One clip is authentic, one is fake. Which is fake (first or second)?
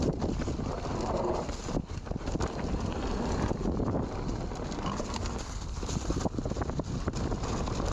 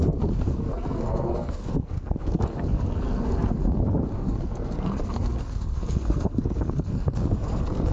second